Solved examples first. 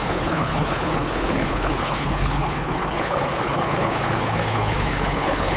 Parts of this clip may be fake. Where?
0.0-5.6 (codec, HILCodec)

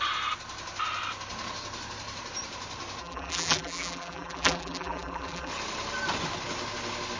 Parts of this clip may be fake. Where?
3.0-5.5 (vocoder, BigVGAN v2)

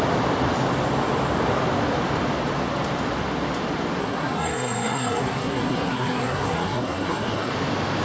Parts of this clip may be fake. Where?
4.0-7.5 (codec, SNAC)

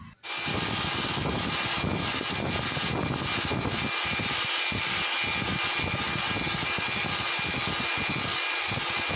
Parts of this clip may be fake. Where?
none

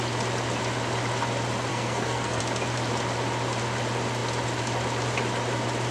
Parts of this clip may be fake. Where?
1.7-2.4 (codec, SNAC)

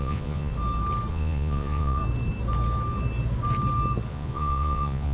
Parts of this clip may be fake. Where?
0.0-0.5 (vocoder, Vocos); 1.1-2.0; 4.1-5.1